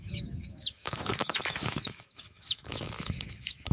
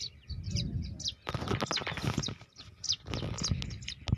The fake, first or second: first